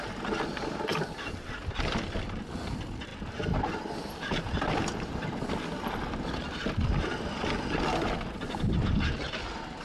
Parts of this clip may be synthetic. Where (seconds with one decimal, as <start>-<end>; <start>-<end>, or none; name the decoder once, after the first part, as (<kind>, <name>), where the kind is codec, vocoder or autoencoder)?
0.9-1.5 (vocoder, BigVGAN v2); 3.1-4.4; 6.4-7.5